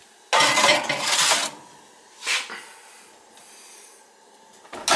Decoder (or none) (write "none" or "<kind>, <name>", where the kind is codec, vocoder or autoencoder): none